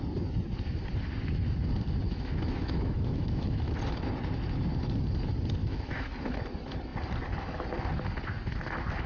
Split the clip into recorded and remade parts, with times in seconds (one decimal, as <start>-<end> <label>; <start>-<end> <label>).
0.0-2.0 recorded; 2.0-3.7 remade; 3.7-5.6 recorded; 5.6-6.1 remade; 6.1-9.1 recorded

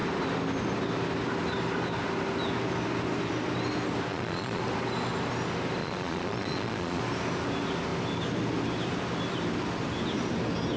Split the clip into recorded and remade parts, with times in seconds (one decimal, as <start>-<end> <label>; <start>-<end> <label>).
0.0-4.1 recorded; 4.1-4.6 remade; 4.6-5.8 recorded; 5.8-7.0 remade; 7.0-10.8 recorded